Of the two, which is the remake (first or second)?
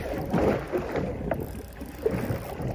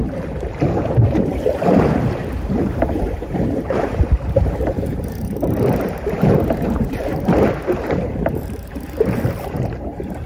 second